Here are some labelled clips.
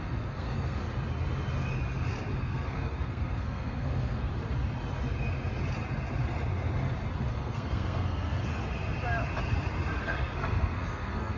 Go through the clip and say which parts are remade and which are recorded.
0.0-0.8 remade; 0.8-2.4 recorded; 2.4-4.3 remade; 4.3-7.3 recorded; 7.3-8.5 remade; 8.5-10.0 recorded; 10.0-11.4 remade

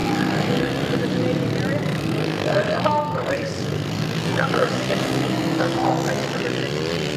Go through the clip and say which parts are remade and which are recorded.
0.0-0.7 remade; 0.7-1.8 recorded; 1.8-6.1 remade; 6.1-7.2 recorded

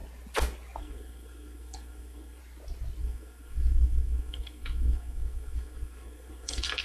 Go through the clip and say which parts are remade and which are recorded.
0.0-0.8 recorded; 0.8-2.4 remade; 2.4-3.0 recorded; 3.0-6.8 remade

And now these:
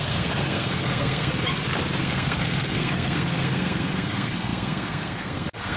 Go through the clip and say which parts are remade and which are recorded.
0.0-1.3 remade; 1.3-2.0 recorded; 2.0-5.8 remade

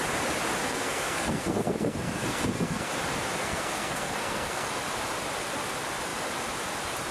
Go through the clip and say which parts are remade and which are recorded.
0.0-0.6 recorded; 0.6-2.9 remade; 2.9-3.4 recorded; 3.4-4.7 remade; 4.7-7.1 recorded